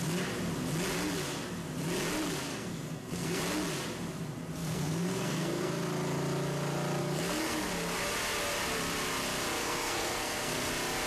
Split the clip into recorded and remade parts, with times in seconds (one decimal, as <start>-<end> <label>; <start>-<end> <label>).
0.0-2.5 recorded; 2.5-3.4 remade; 3.4-4.6 recorded; 4.6-5.7 remade; 5.7-7.0 recorded; 7.0-7.7 remade; 7.7-9.6 recorded; 9.6-10.7 remade; 10.7-11.1 recorded